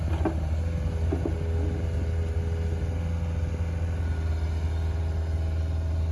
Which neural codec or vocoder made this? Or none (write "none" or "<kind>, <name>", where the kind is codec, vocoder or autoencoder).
none